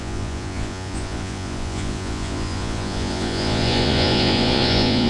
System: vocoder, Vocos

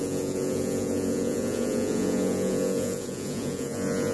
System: vocoder, Vocos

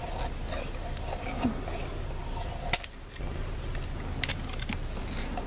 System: none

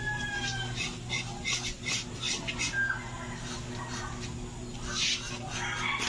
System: none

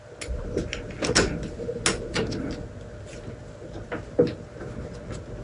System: none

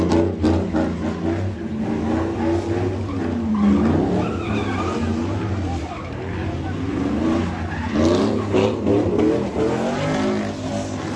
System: none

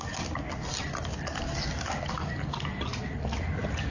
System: none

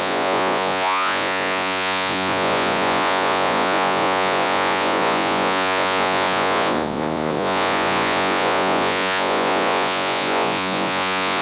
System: vocoder, Vocos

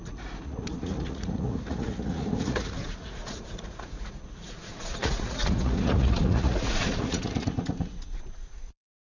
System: vocoder, Vocos